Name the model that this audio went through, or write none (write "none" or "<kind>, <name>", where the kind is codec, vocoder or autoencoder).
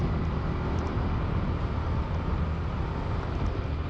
none